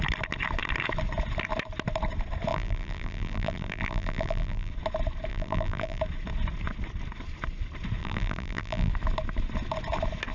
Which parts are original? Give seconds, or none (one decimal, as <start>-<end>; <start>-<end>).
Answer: 0.0-2.5; 4.7-5.3; 6.0-8.0; 8.9-10.3